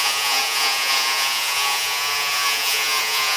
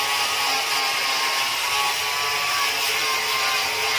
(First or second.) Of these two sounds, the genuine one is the second